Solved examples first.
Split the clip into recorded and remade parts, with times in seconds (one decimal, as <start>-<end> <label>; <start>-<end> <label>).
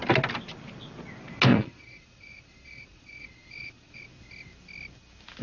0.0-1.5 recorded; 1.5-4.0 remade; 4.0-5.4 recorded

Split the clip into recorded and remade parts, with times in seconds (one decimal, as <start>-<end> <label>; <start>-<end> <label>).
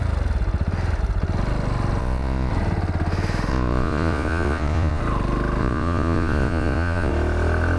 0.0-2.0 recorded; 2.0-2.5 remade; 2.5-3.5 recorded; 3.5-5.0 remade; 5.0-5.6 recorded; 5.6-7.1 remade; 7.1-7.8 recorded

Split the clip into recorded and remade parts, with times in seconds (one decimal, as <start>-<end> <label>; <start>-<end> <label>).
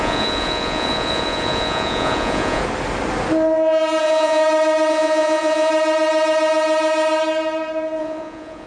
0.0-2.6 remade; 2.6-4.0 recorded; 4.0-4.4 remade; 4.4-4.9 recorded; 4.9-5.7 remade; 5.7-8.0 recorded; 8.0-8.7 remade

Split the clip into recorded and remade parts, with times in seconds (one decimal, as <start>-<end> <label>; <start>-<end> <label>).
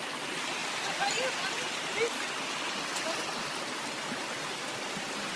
0.0-5.4 recorded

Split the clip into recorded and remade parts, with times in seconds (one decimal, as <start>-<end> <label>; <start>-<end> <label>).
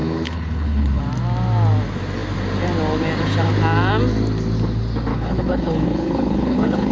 0.0-1.0 remade; 1.0-5.1 recorded; 5.1-6.9 remade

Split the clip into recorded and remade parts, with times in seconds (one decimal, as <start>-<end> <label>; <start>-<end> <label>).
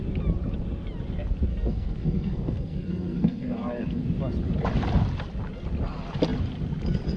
0.0-1.5 recorded; 1.5-4.0 remade; 4.0-7.2 recorded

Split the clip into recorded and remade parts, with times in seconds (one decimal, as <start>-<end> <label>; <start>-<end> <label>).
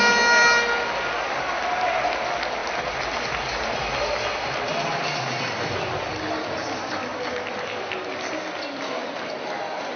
0.0-10.0 recorded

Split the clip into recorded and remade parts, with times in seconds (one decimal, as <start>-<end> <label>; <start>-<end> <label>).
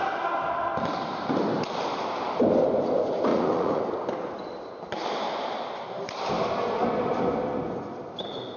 0.0-3.3 recorded; 3.3-3.8 remade; 3.8-8.6 recorded